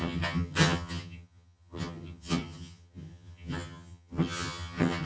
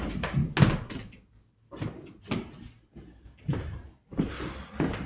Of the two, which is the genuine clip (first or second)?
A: second